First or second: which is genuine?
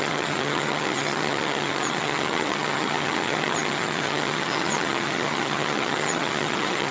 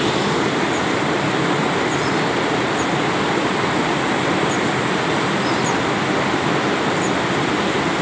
second